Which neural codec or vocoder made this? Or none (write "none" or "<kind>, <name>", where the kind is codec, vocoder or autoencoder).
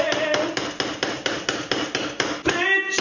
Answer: none